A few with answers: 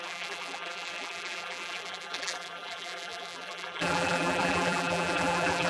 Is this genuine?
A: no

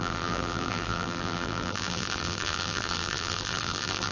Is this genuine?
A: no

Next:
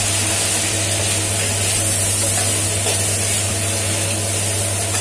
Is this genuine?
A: yes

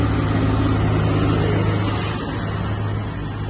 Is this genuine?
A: yes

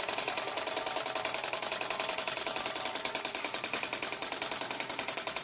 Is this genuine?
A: no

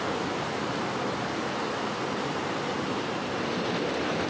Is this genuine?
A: yes